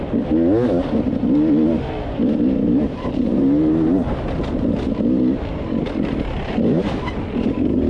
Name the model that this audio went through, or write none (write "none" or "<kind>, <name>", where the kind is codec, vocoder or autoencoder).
none